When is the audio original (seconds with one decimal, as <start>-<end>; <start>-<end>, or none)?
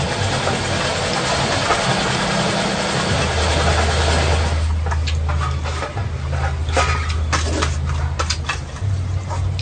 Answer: 0.0-9.6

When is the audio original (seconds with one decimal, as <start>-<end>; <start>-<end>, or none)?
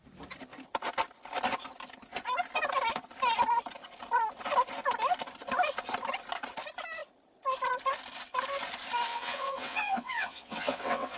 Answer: 0.0-9.1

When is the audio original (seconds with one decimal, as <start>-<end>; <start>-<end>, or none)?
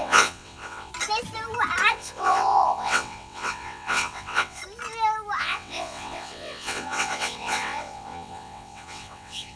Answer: 0.9-1.9; 4.6-5.4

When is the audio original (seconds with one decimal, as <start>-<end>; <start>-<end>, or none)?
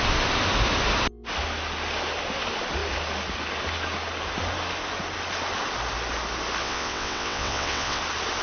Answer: 0.0-6.6; 8.0-8.4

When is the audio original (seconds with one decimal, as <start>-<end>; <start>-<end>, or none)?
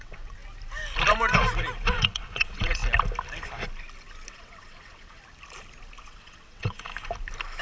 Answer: 0.4-1.9; 2.8-4.3; 5.2-6.0; 6.9-7.6